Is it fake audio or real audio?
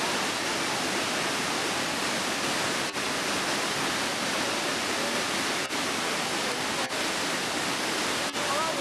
real